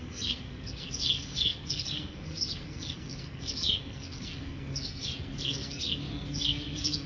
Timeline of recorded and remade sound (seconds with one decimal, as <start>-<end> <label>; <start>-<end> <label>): 0.0-7.1 remade

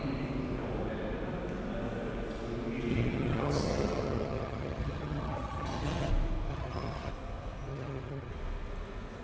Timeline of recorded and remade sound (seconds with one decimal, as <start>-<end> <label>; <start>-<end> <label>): 0.0-2.9 recorded; 2.9-6.1 remade; 6.1-6.5 recorded; 6.5-7.1 remade; 7.1-7.7 recorded; 7.7-8.3 remade; 8.3-9.2 recorded

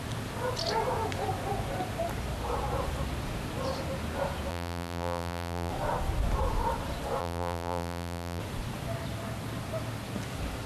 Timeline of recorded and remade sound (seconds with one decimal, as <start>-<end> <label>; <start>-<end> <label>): 0.0-4.5 recorded; 4.5-5.7 remade; 5.7-7.2 recorded; 7.2-8.4 remade; 8.4-10.7 recorded

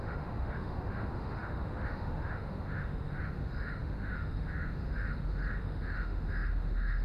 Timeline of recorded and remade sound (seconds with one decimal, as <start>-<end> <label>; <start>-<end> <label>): 0.0-7.0 remade